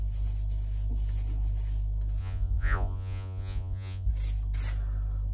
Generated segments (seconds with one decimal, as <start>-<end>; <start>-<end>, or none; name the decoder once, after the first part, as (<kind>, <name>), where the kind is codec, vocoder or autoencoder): 2.2-4.1 (vocoder, Vocos)

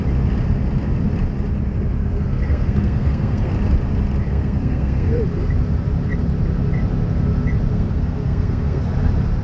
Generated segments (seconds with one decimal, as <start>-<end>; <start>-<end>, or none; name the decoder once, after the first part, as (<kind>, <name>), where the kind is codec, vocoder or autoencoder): 2.0-3.5 (codec, SNAC); 4.3-5.2; 7.7-8.8

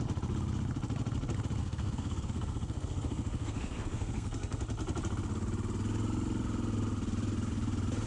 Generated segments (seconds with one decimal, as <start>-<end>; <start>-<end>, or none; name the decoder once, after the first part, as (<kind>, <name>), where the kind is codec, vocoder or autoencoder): 1.6-4.6 (codec, SNAC)

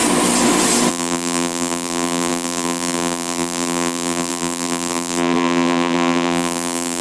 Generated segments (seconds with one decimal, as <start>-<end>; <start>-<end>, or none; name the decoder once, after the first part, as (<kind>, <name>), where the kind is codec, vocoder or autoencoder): 0.9-7.0 (vocoder, BigVGAN v2)

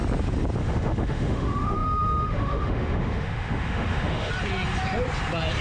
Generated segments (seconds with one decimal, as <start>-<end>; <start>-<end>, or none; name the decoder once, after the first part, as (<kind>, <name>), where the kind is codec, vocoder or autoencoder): 0.6-4.3 (autoencoder, DAC-VAE)

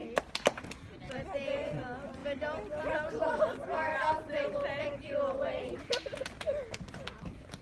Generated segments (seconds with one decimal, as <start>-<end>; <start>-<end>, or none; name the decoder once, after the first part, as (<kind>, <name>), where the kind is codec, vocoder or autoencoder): none